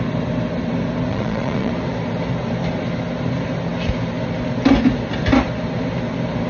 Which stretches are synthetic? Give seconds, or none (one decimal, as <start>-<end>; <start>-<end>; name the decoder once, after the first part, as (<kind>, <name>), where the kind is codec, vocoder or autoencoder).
1.1-1.7 (vocoder, Vocos)